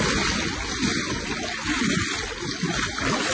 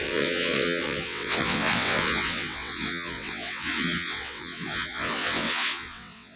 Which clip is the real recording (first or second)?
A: first